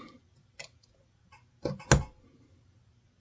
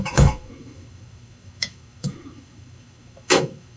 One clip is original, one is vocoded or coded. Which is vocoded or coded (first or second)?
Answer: second